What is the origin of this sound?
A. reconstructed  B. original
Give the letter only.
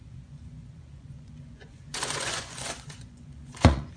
A